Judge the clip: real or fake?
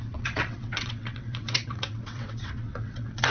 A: fake